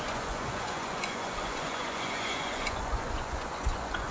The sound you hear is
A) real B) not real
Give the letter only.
B